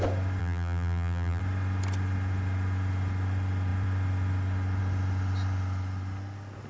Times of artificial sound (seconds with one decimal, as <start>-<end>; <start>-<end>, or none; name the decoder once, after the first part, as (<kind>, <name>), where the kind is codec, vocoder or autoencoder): 0.4-1.4 (vocoder, BigVGAN v2)